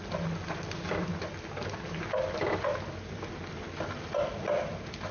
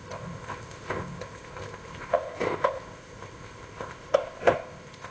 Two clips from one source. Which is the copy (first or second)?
second